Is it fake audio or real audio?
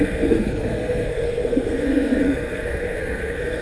fake